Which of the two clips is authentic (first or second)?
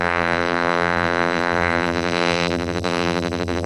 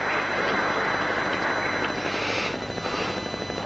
second